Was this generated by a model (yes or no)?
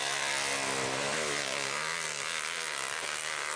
no